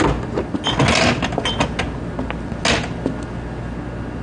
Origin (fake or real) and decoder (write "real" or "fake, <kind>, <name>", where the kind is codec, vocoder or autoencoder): real